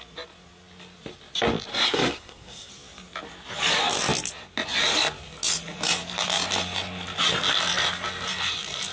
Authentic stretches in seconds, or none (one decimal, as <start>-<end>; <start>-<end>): 0.0-1.7; 2.7-8.9